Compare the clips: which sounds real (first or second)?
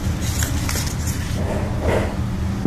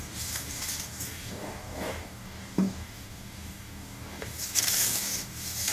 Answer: first